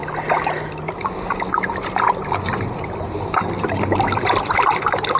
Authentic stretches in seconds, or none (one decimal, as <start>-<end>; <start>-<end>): 0.0-5.2